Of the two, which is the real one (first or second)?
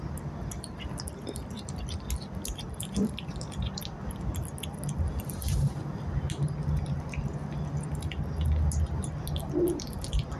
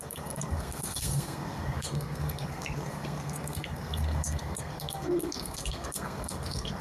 first